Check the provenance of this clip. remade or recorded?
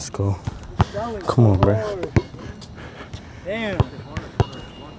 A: recorded